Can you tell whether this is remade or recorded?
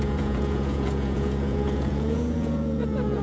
remade